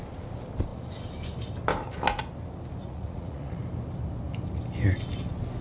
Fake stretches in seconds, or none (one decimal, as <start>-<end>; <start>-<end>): 2.8-3.6